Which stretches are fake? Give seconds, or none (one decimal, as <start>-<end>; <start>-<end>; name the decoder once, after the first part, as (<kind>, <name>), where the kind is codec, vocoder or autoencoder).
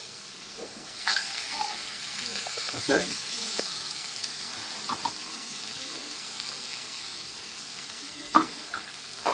0.0-4.5 (codec, SNAC); 5.1-9.3